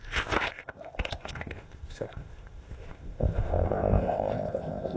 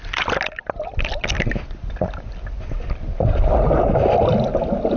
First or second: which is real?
second